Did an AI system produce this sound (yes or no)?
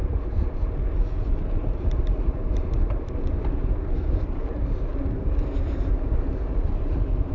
yes